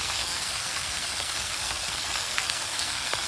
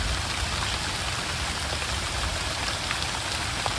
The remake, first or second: first